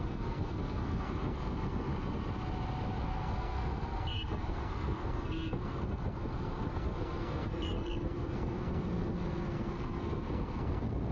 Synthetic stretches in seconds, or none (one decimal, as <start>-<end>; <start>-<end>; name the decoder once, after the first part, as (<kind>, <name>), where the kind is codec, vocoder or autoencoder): 0.0-1.9 (codec, SNAC); 3.0-11.1